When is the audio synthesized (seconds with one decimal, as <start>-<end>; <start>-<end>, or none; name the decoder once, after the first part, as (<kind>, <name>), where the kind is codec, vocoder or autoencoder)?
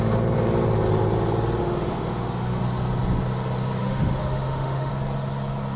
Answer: 1.6-2.6 (autoencoder, DAC-VAE); 3.8-4.9